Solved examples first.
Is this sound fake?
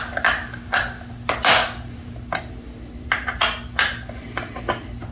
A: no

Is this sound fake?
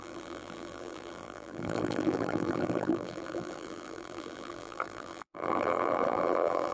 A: yes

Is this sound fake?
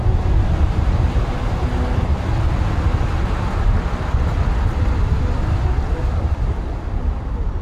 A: no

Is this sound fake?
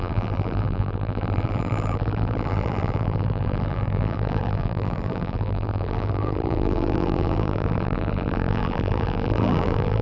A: yes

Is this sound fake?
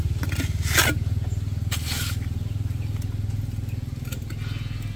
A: no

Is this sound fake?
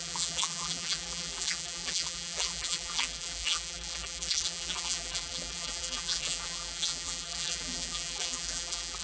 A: yes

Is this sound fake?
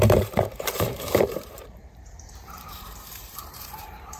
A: yes